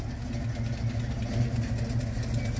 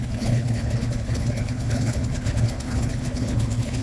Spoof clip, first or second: second